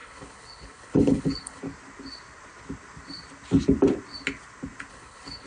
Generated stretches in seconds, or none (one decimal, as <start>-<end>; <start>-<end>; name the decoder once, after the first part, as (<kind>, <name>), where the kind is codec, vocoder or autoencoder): 0.0-1.6 (codec, HILCodec); 4.9-5.5